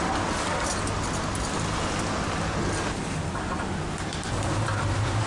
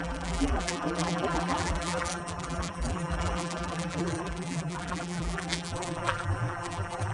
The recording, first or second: first